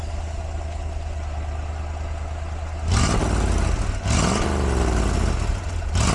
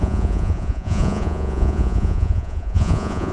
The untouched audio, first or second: first